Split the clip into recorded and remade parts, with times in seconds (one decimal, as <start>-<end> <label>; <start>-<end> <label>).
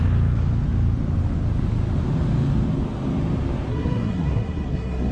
0.0-3.7 recorded; 3.7-5.1 remade